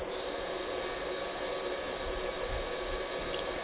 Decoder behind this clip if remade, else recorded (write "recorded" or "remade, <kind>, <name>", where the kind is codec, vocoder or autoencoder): recorded